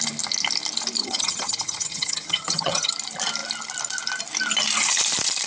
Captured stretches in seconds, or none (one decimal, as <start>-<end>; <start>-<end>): 0.0-1.0; 2.9-5.5